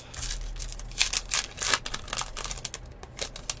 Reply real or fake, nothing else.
real